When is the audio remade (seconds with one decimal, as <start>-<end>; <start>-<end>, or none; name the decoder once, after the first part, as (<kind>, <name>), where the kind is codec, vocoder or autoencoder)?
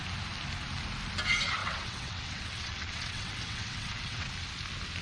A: 1.6-4.3 (vocoder, WaveNeXt)